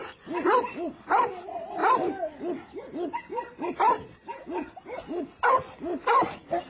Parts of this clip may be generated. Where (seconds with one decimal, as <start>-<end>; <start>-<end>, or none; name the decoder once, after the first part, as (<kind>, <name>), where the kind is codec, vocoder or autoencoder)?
none